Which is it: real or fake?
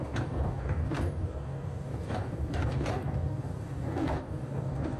fake